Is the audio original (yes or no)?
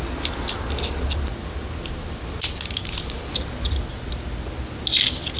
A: yes